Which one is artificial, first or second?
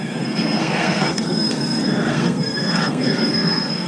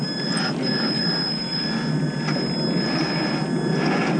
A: first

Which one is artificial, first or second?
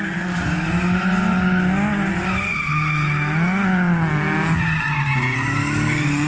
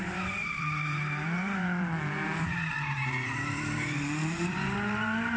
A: second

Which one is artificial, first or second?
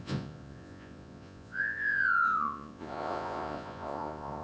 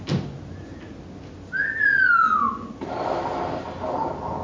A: first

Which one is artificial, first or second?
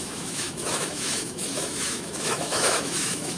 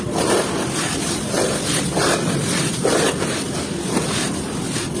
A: first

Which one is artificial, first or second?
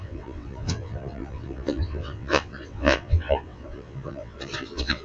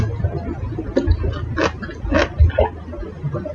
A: first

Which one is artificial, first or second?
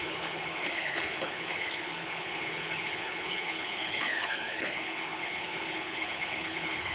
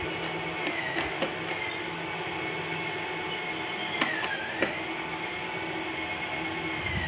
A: first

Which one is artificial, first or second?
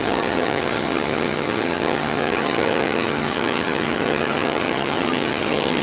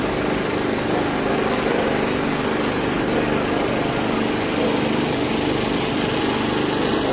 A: first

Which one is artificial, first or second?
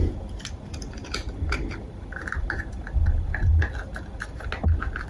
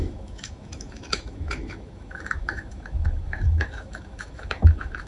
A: second